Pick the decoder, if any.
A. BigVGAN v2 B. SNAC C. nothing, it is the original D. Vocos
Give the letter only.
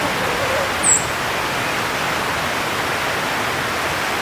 C